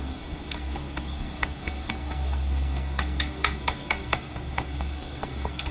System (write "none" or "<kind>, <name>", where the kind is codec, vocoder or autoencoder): codec, SNAC